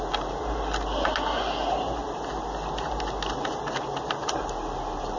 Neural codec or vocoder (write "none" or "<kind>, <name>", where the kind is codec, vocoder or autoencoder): none